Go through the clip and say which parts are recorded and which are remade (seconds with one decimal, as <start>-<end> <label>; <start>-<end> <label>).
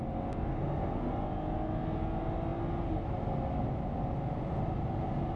0.0-0.5 recorded; 0.5-1.1 remade; 1.1-5.4 recorded